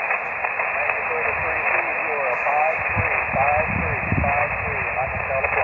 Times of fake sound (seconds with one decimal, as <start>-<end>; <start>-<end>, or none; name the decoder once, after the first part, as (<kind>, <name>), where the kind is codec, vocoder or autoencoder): none